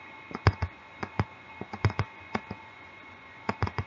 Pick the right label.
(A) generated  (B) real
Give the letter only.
A